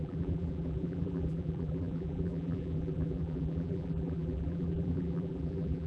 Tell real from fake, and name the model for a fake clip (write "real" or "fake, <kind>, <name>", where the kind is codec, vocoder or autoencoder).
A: fake, vocoder, BigVGAN v2